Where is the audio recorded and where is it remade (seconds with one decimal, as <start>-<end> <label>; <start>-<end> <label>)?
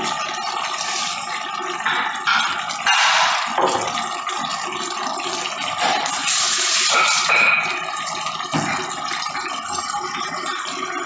0.0-11.1 recorded